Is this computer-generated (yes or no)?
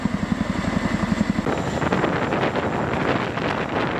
no